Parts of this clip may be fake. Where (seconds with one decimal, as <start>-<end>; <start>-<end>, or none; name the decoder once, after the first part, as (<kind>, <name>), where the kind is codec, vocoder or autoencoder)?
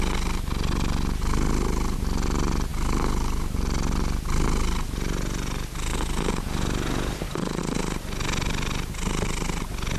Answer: none